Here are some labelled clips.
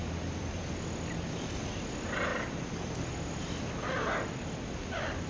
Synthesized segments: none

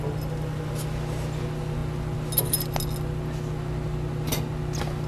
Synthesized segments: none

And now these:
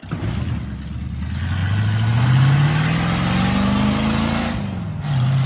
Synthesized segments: none